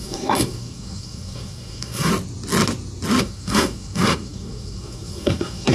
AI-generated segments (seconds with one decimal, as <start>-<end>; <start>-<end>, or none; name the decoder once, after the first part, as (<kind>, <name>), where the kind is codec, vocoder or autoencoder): 0.0-2.1 (codec, SNAC); 3.2-5.7